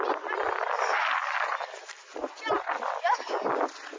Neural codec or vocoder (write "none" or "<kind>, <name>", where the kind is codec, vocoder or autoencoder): none